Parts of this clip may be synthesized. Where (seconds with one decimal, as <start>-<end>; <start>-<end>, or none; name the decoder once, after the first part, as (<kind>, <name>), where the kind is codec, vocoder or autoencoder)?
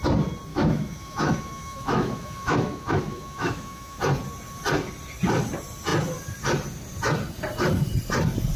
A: 0.5-4.0 (autoencoder, DAC-VAE)